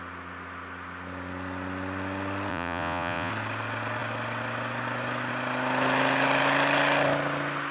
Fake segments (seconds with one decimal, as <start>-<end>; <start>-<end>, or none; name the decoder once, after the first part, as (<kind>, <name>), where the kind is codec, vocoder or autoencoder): 2.5-3.3 (vocoder, Vocos)